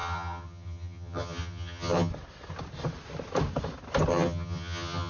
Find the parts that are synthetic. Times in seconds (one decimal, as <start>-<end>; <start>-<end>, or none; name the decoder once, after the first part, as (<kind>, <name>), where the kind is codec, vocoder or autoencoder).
0.0-2.1 (vocoder, HiFi-GAN); 4.1-5.1